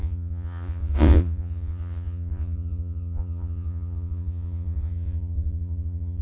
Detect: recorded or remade remade